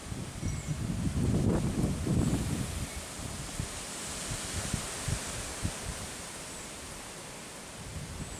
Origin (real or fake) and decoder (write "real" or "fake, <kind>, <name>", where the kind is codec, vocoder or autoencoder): fake, vocoder, BigVGAN v2